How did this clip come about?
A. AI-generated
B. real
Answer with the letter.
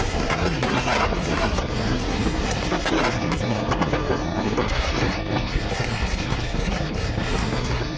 A